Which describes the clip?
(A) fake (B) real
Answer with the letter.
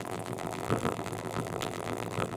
A